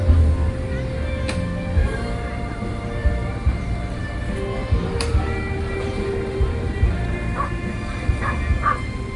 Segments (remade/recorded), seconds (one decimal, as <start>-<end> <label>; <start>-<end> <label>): 0.0-1.8 recorded; 1.8-4.0 remade; 4.0-4.6 recorded; 4.6-8.1 remade; 8.1-9.2 recorded